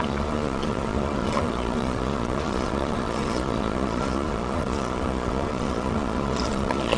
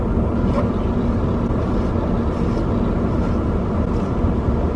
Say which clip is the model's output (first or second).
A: first